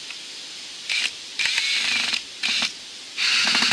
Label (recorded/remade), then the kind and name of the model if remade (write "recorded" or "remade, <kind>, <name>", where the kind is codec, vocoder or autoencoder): recorded